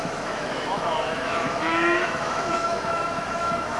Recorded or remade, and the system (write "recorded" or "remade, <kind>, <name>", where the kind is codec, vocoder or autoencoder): remade, autoencoder, DAC-VAE